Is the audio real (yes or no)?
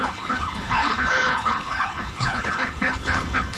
no